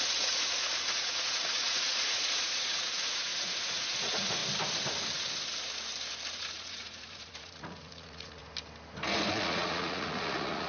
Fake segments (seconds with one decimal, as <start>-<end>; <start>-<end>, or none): 0.0-4.4; 6.3-8.4; 9.3-10.7